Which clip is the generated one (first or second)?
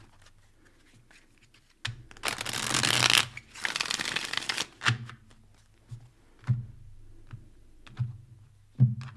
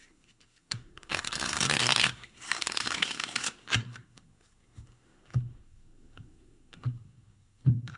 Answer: second